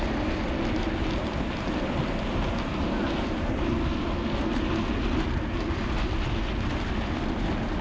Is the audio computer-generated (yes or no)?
no